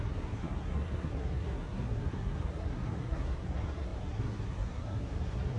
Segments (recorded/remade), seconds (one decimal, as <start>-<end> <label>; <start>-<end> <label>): 0.0-5.6 remade